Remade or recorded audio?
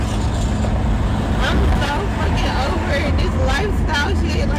recorded